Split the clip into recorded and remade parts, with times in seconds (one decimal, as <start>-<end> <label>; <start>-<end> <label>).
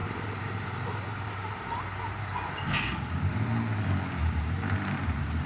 0.0-2.3 remade; 2.3-4.2 recorded; 4.2-5.5 remade